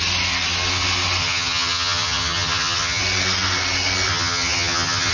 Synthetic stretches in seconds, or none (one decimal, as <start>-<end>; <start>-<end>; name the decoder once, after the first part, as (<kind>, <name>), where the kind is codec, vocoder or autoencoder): 1.2-3.0 (vocoder, HiFi-GAN); 4.1-5.1